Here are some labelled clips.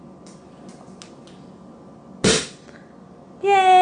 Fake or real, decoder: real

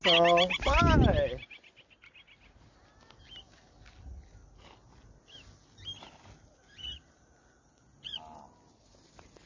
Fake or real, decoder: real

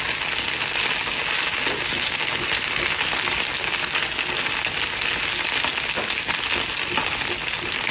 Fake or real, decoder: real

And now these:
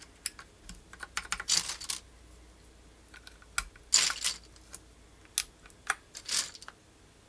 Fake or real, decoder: real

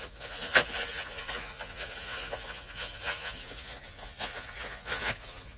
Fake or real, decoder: fake, vocoder, Vocos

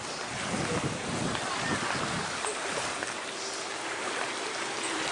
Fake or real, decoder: real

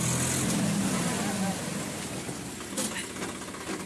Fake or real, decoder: real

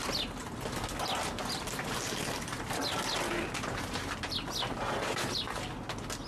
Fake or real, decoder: real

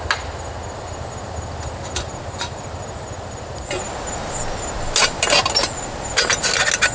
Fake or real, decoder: real